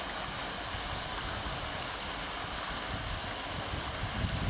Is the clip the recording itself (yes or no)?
yes